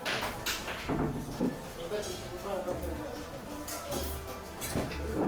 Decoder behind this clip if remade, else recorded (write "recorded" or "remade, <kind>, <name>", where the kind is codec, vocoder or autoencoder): recorded